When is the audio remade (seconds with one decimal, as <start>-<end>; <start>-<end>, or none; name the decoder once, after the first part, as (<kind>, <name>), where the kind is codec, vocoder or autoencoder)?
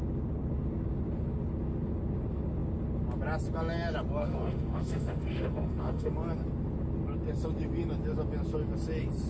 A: 4.2-6.1 (autoencoder, DAC-VAE)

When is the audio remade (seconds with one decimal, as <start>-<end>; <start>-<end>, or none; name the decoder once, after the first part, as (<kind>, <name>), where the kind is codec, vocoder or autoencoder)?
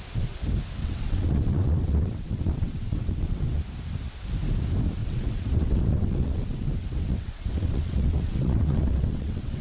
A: 0.8-3.6 (vocoder, WaveNeXt); 5.0-9.6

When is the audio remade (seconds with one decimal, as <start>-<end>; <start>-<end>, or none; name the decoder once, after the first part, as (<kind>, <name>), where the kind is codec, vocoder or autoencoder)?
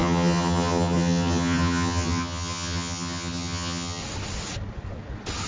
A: 0.0-4.0 (vocoder, HiFi-GAN)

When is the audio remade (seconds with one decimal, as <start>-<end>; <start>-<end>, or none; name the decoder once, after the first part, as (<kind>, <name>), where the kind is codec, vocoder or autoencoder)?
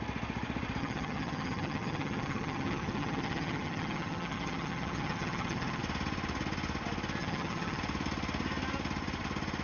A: 0.8-5.8 (vocoder, HiFi-GAN); 7.2-7.8